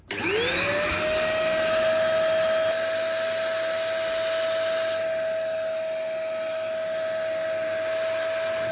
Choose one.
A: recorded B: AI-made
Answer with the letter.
A